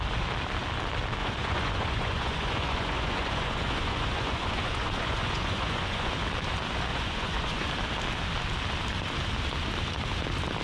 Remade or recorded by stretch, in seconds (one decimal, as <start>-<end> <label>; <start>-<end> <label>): 0.0-1.2 recorded; 1.2-6.1 remade; 6.1-6.9 recorded; 6.9-7.7 remade; 7.7-10.6 recorded